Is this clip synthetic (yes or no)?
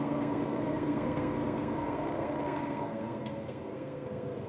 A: yes